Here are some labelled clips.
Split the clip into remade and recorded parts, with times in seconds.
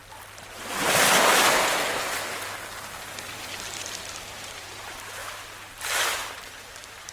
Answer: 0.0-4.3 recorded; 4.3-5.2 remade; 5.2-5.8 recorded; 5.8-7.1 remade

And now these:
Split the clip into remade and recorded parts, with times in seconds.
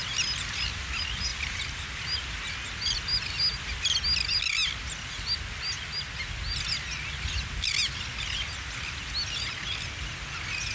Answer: 0.0-1.3 recorded; 1.3-2.0 remade; 2.0-10.7 recorded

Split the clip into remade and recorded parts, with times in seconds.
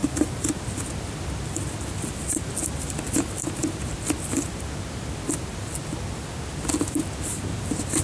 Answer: 0.0-0.6 remade; 0.6-8.0 recorded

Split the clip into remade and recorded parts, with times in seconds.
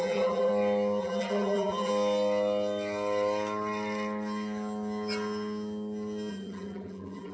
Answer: 0.0-0.5 remade; 0.5-1.0 recorded; 1.0-1.9 remade; 1.9-6.3 recorded; 6.3-7.3 remade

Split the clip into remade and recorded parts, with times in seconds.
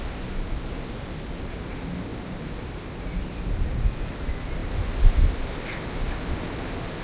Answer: 0.0-2.1 recorded; 2.1-3.2 remade; 3.2-7.0 recorded